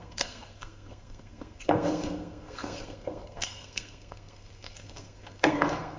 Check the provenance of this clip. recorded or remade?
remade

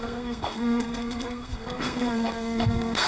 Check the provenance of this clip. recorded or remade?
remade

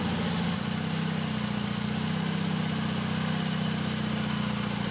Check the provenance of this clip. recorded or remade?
recorded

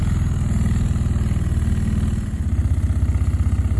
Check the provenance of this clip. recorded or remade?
recorded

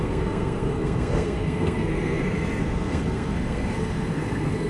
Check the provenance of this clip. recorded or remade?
remade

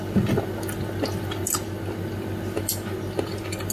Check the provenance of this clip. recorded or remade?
recorded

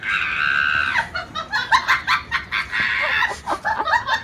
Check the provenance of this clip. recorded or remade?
recorded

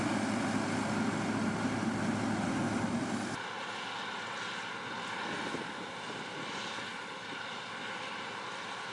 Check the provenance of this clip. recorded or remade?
recorded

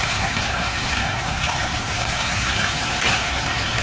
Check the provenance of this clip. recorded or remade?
remade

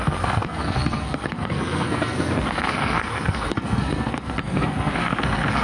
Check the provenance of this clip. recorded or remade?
remade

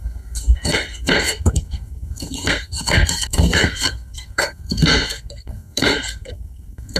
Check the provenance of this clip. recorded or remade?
remade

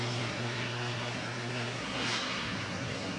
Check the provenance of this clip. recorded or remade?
remade